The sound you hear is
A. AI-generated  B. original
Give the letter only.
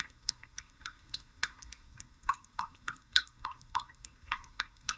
A